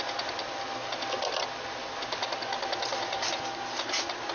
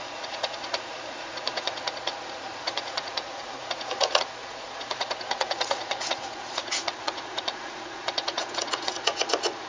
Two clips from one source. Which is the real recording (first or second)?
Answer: first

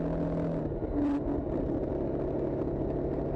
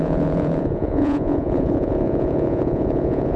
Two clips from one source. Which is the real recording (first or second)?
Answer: first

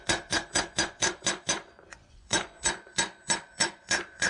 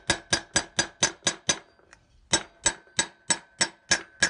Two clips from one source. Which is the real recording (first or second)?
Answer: second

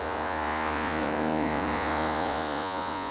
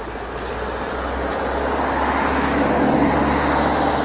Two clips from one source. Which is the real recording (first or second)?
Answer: second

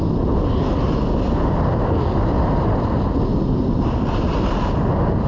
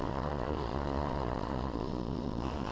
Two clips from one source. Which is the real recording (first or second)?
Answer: first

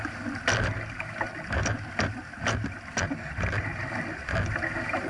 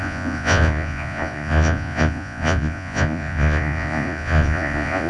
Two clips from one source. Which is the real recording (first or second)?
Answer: first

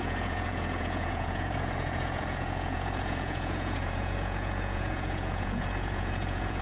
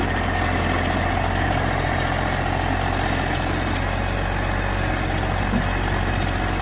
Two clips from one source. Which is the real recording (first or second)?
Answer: second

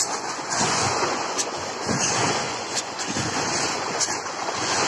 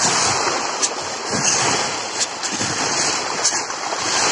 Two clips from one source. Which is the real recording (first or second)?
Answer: second